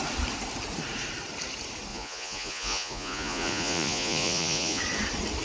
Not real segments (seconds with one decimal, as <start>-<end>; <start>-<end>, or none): 1.9-4.8